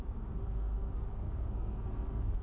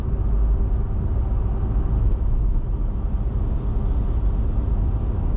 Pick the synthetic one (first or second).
first